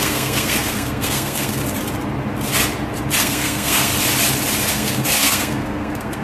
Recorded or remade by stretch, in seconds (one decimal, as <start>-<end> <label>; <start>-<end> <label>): 0.0-1.6 remade; 1.6-3.2 recorded; 3.2-3.9 remade; 3.9-4.7 recorded; 4.7-6.2 remade